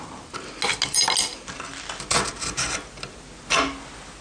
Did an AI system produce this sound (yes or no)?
no